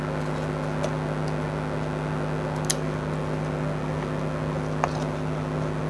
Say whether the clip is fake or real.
real